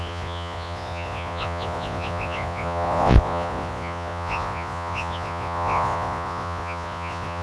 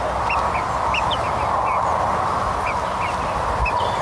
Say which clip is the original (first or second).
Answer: second